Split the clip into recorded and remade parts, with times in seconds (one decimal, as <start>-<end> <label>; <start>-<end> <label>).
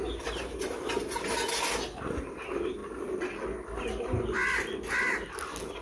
0.0-5.8 recorded